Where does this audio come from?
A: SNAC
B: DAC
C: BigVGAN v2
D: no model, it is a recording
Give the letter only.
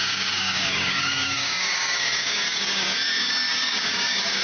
B